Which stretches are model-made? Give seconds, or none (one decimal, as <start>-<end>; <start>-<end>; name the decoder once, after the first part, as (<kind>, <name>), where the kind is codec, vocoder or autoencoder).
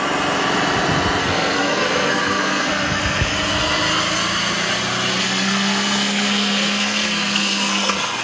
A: 1.2-3.0 (codec, SNAC); 5.2-8.2